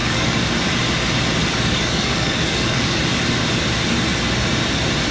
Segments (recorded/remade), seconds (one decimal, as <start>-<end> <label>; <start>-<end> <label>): 0.0-0.7 remade; 0.7-1.4 recorded; 1.4-3.0 remade; 3.0-5.1 recorded